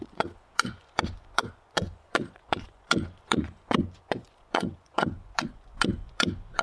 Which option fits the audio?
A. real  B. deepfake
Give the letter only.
B